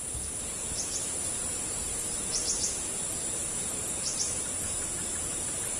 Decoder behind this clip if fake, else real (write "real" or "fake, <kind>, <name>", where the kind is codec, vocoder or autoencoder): fake, vocoder, BigVGAN v2